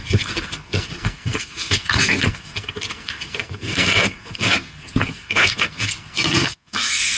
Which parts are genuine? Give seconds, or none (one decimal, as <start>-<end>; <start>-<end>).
none